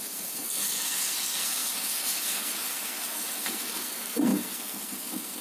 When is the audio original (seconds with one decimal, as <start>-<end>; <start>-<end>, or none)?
none